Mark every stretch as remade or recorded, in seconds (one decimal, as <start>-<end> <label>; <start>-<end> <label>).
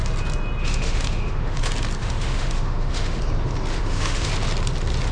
0.0-0.6 recorded; 0.6-1.6 remade; 1.6-2.0 recorded; 2.0-3.2 remade; 3.2-3.7 recorded; 3.7-4.3 remade; 4.3-5.1 recorded